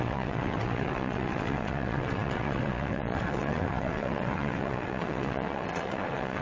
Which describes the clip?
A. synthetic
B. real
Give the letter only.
A